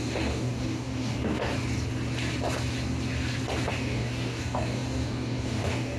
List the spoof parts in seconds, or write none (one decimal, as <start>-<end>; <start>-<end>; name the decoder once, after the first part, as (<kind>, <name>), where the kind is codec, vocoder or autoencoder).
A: 0.0-1.5 (codec, DAC); 3.7-6.0